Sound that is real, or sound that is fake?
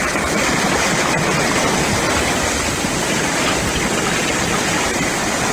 real